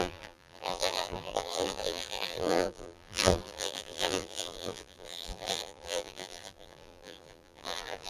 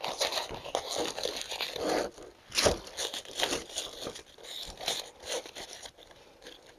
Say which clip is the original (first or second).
second